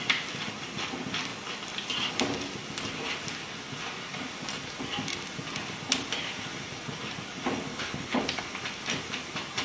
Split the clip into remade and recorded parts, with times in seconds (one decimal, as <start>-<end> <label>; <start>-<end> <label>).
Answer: 0.0-7.7 recorded; 7.7-8.2 remade; 8.2-9.6 recorded